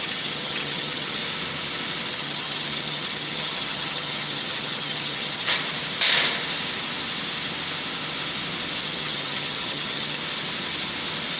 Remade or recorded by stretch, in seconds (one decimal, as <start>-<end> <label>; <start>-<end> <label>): 0.0-1.2 remade; 1.2-2.1 recorded; 2.1-5.5 remade; 5.5-8.8 recorded; 8.8-10.2 remade; 10.2-11.4 recorded